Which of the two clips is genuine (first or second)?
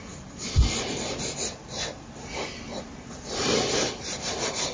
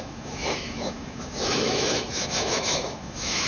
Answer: first